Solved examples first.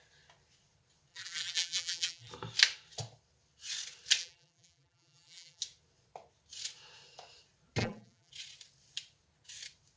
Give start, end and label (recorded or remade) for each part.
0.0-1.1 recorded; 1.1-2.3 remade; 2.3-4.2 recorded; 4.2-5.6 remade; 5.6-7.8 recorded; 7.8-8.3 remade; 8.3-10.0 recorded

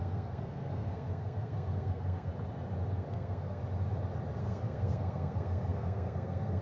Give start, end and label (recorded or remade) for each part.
0.0-2.3 remade; 2.3-2.9 recorded; 2.9-3.6 remade; 3.6-4.4 recorded; 4.4-6.6 remade

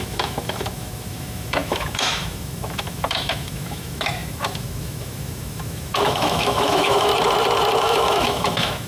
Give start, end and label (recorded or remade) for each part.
0.0-7.1 remade; 7.1-7.8 recorded; 7.8-8.9 remade

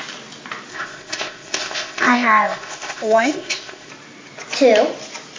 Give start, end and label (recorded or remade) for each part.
0.0-0.7 recorded; 0.7-3.9 remade; 3.9-5.4 recorded

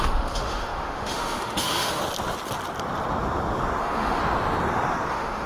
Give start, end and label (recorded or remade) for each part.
0.0-2.0 remade; 2.0-3.8 recorded; 3.8-4.2 remade; 4.2-5.1 recorded; 5.1-5.5 remade